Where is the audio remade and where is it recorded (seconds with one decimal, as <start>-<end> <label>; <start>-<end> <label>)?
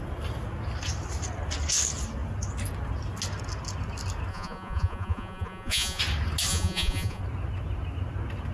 0.0-4.3 recorded; 4.3-6.0 remade; 6.0-6.5 recorded; 6.5-7.2 remade; 7.2-8.5 recorded